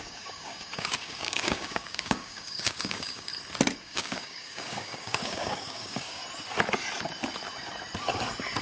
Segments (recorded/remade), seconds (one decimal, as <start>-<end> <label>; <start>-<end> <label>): 0.0-3.3 remade; 3.3-3.8 recorded; 3.8-6.2 remade; 6.2-8.6 recorded